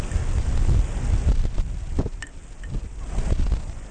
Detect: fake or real real